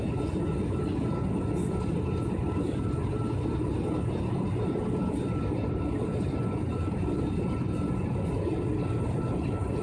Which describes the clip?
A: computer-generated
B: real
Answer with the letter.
B